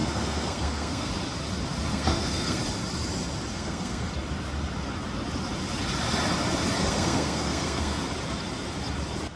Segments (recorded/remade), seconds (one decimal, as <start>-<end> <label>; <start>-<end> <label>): 0.0-1.1 remade; 1.1-1.9 recorded; 1.9-2.6 remade; 2.6-3.5 recorded; 3.5-4.1 remade; 4.1-6.8 recorded; 6.8-8.0 remade; 8.0-9.4 recorded